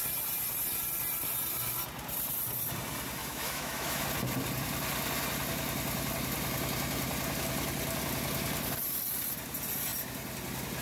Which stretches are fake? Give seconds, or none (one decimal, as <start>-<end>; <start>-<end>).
3.2-4.0